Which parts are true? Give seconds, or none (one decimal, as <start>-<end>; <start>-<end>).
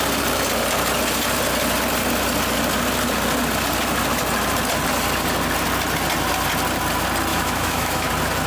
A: 0.0-7.3; 8.1-8.5